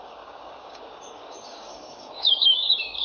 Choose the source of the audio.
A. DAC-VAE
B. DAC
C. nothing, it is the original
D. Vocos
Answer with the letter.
B